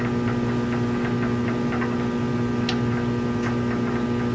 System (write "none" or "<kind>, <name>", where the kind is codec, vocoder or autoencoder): none